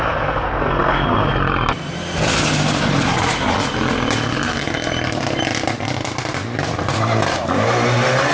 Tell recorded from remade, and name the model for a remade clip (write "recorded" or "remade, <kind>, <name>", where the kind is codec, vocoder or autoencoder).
recorded